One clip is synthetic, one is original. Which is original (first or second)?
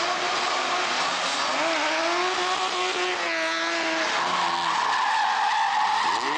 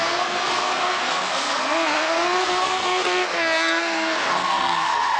first